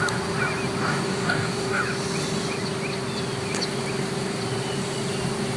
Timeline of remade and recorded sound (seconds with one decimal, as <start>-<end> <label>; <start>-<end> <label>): 0.0-0.8 recorded; 0.8-1.8 remade; 1.8-5.6 recorded